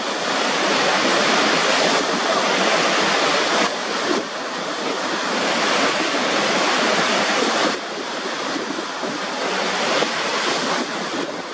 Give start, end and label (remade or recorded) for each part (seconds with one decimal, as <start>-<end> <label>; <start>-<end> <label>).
0.0-6.2 recorded; 6.2-8.8 remade; 8.8-11.5 recorded

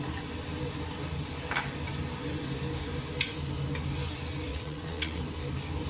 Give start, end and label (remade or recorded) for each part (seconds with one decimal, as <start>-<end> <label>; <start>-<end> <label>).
0.0-4.5 recorded; 4.5-5.2 remade; 5.2-5.9 recorded

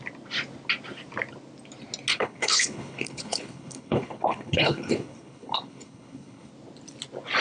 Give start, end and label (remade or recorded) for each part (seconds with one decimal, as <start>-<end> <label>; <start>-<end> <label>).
0.0-2.1 recorded; 2.1-6.5 remade; 6.5-7.4 recorded

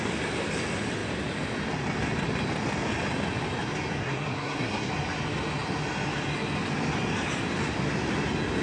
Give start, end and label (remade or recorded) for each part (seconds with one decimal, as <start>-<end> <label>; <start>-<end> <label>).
0.0-4.0 recorded; 4.0-4.9 remade; 4.9-8.6 recorded